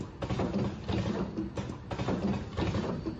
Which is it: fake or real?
real